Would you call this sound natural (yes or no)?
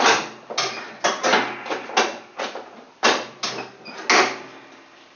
yes